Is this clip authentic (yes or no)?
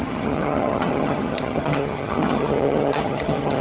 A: no